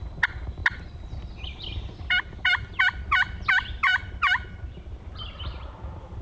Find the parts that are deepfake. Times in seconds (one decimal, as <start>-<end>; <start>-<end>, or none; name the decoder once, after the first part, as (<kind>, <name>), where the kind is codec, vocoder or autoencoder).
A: none